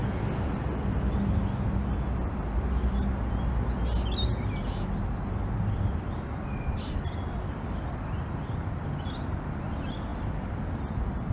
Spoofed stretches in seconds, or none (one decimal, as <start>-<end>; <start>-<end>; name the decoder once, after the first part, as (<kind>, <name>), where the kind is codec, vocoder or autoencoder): none